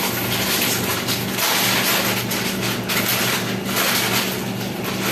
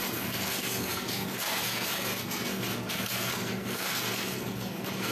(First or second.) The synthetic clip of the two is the second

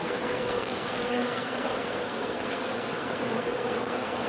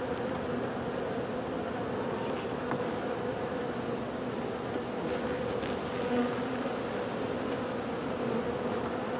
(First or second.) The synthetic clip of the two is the first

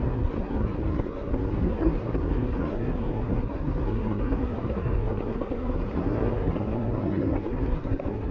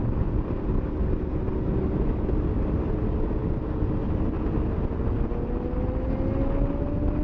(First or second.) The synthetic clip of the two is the first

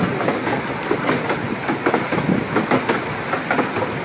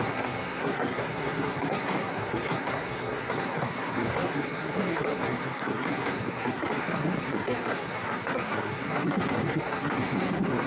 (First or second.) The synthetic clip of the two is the second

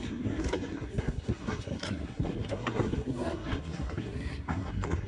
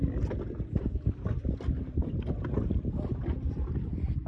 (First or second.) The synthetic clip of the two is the first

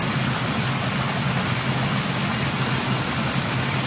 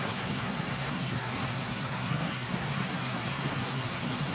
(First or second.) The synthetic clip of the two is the second